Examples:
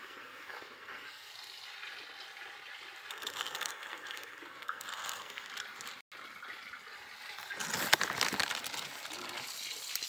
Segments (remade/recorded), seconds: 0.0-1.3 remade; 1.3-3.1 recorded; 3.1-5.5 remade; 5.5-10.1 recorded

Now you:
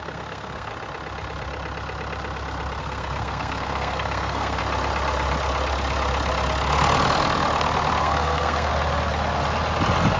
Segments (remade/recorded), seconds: 0.0-0.7 remade; 0.7-2.8 recorded; 2.8-4.6 remade; 4.6-8.0 recorded; 8.0-8.7 remade; 8.7-10.2 recorded

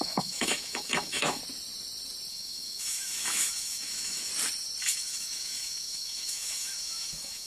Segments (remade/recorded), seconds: 0.0-1.4 remade; 1.4-2.3 recorded; 2.3-4.3 remade; 4.3-4.8 recorded; 4.8-7.5 remade

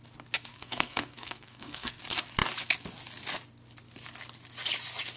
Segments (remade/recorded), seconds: 0.0-0.5 recorded; 0.5-2.0 remade; 2.0-5.2 recorded

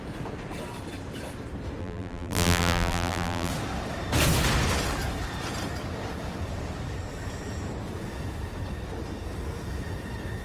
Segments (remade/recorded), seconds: 0.0-1.8 recorded; 1.8-3.5 remade; 3.5-10.4 recorded

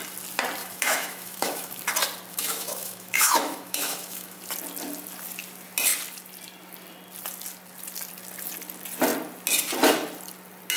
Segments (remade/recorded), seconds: 0.0-0.6 recorded; 0.6-1.8 remade; 1.8-2.3 recorded; 2.3-4.4 remade; 4.4-10.8 recorded

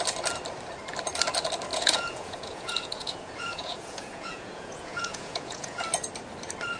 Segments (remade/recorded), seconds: 0.0-1.7 recorded; 1.7-5.8 remade; 5.8-6.8 recorded